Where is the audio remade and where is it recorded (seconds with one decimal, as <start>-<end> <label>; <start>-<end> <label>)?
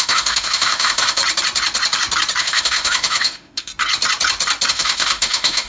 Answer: 0.0-1.2 remade; 1.2-2.4 recorded; 2.4-3.7 remade; 3.7-4.7 recorded; 4.7-5.7 remade